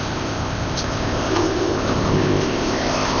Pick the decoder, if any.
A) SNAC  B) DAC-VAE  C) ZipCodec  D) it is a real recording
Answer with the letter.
C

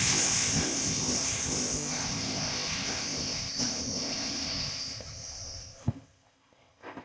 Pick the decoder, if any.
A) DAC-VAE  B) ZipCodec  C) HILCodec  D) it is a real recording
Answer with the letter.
B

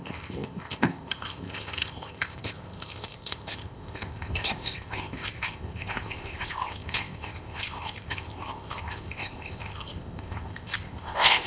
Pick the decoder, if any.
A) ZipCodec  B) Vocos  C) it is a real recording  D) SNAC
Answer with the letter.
A